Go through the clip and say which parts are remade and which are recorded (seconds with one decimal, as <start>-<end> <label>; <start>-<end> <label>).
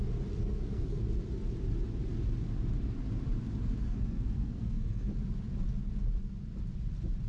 0.0-0.4 recorded; 0.4-1.0 remade; 1.0-3.8 recorded; 3.8-5.1 remade; 5.1-7.3 recorded